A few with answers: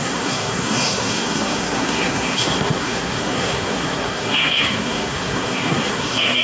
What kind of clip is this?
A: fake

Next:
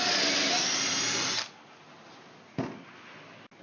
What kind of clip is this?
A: real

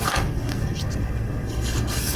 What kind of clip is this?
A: fake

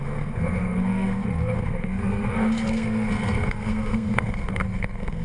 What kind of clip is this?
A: fake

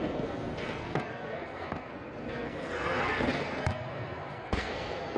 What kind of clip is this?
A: fake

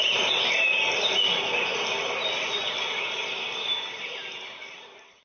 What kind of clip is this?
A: real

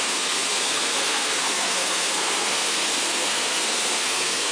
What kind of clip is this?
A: fake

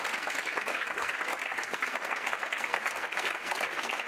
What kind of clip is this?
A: fake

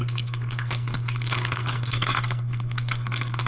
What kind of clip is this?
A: fake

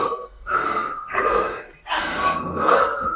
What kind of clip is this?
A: fake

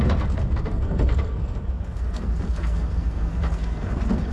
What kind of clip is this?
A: fake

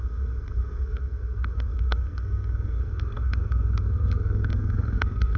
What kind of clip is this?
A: fake